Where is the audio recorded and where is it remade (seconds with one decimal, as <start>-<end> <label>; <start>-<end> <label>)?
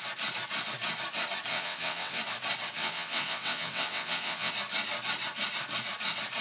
0.0-1.5 recorded; 1.5-2.2 remade; 2.2-2.8 recorded; 2.8-4.5 remade; 4.5-6.4 recorded